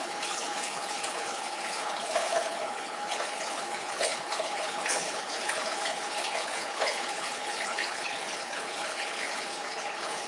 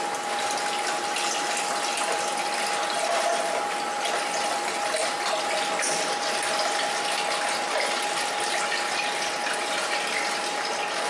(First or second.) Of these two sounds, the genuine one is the second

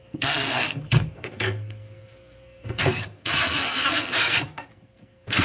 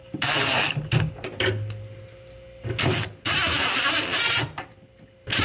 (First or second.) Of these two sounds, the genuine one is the second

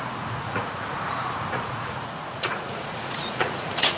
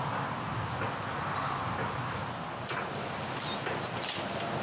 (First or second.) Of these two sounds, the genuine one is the second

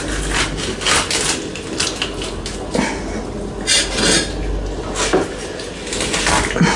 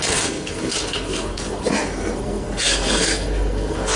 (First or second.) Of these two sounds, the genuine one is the first